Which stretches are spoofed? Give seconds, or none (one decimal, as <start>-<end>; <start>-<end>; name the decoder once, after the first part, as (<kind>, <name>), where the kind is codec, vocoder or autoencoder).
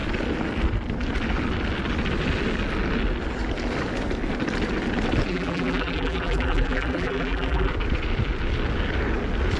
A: 5.3-7.7 (vocoder, BigVGAN v2)